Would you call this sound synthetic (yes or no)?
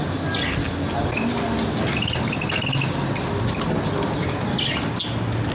no